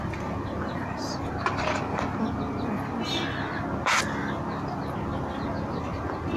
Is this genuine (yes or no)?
yes